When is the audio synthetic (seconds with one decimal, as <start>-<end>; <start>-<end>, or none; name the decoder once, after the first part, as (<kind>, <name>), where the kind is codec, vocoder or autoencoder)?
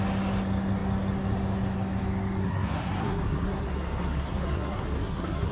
2.4-5.5 (codec, SNAC)